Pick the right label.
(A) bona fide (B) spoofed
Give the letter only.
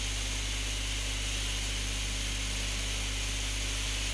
A